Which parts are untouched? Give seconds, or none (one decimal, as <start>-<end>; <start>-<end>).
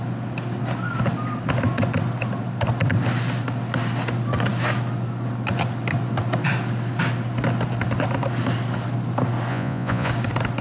0.0-9.5; 10.1-10.6